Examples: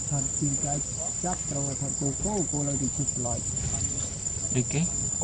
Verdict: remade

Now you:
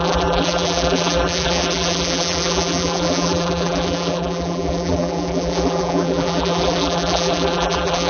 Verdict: remade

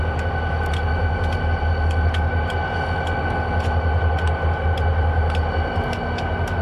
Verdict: recorded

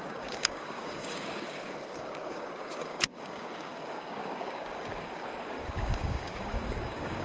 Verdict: remade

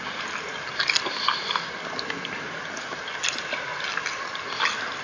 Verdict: recorded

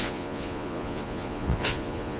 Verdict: remade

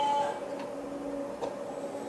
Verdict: recorded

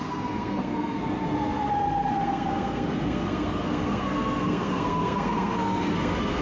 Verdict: remade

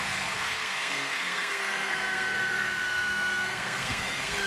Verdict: remade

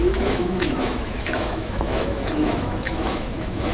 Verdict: remade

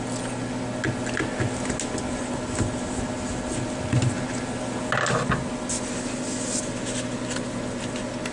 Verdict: recorded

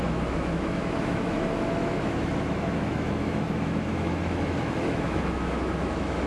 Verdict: remade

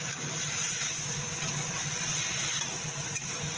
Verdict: remade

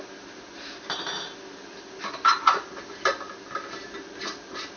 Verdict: recorded